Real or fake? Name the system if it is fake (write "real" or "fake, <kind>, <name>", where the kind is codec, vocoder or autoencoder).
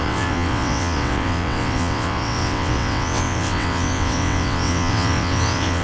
fake, vocoder, WaveNeXt